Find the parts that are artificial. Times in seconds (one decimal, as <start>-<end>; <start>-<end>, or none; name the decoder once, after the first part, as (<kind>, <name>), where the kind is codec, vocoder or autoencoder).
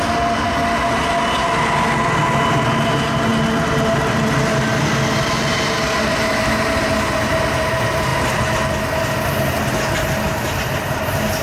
none